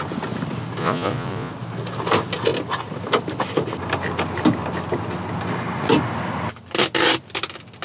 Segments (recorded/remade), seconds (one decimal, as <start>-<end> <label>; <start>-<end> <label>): 0.0-0.8 recorded; 0.8-1.5 remade; 1.5-7.8 recorded